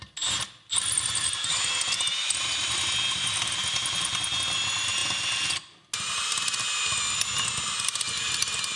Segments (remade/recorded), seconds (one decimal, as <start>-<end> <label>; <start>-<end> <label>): 0.0-8.8 recorded